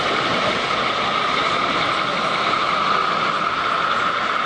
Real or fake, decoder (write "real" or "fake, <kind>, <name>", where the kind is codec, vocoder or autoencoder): real